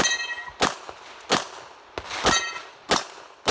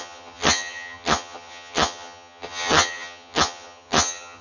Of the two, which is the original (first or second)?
first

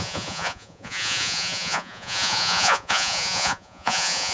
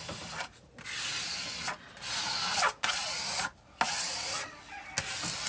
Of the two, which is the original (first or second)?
second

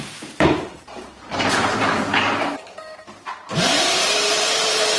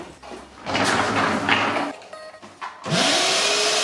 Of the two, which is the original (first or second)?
second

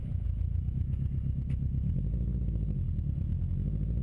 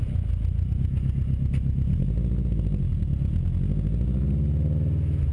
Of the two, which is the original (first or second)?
second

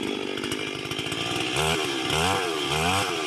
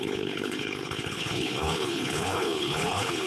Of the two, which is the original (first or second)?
first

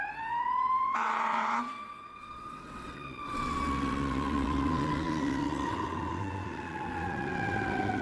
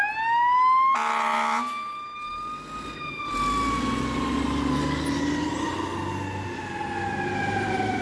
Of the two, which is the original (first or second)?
second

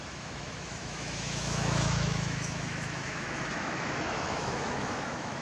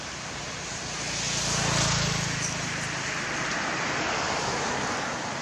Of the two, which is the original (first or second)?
second